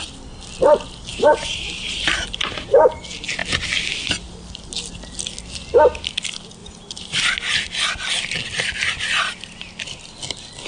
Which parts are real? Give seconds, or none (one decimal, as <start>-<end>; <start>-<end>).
0.0-1.1; 3.0-6.6; 7.2-10.7